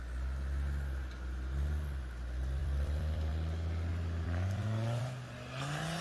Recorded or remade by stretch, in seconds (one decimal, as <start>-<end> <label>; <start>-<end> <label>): 0.0-2.6 recorded; 2.6-3.3 remade; 3.3-3.9 recorded; 3.9-5.0 remade; 5.0-6.0 recorded